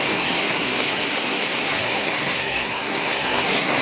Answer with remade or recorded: remade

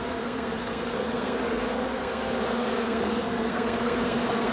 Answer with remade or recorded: remade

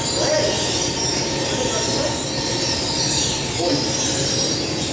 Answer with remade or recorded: recorded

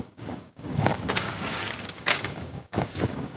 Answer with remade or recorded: remade